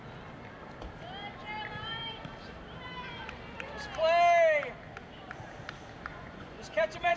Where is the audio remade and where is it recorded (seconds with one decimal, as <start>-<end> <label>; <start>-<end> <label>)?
0.0-6.1 recorded; 6.1-7.2 remade